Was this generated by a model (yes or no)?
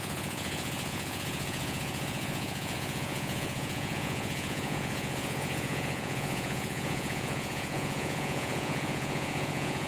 yes